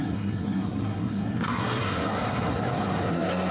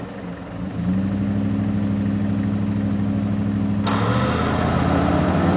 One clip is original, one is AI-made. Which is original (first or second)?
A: second